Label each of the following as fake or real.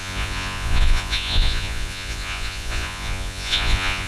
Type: fake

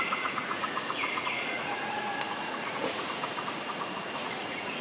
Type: fake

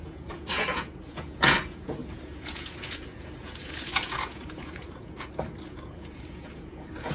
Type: fake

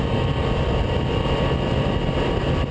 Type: real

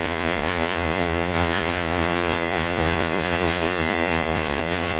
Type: fake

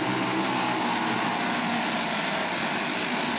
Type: real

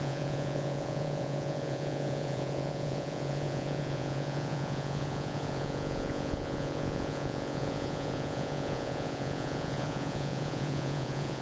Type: fake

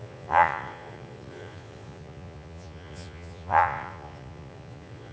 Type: fake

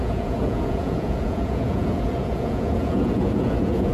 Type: fake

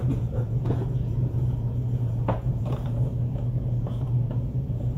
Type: fake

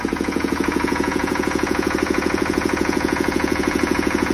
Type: fake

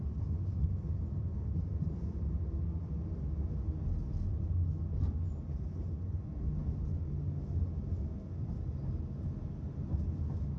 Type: real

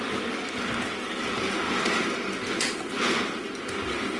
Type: real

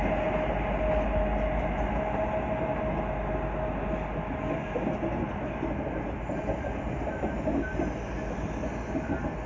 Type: real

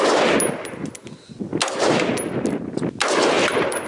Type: real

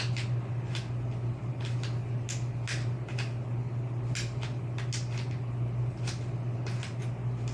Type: real